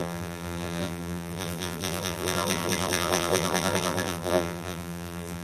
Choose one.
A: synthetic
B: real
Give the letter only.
A